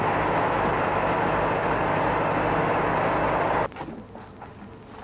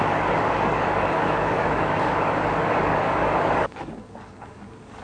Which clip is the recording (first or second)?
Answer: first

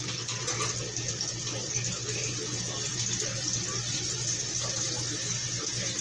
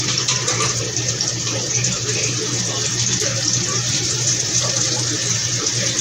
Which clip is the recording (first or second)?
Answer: first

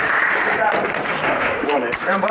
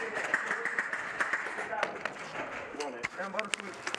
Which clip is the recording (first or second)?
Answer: second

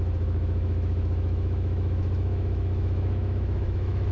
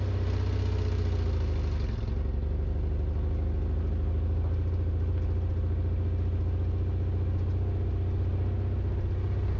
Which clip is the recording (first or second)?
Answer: second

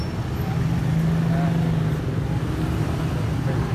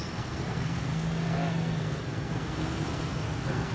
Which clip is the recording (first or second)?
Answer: first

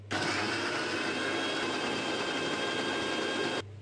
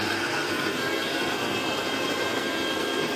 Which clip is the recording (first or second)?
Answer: first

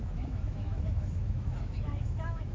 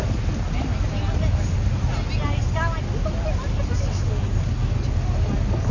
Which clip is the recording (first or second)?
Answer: second